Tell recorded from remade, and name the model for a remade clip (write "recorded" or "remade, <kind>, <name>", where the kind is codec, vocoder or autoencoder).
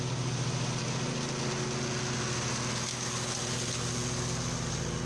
recorded